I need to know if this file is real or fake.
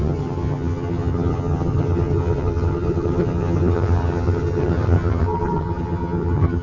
fake